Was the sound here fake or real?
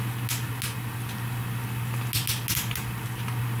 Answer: real